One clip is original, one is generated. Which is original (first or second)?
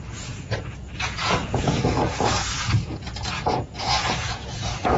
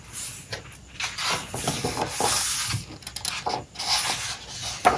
second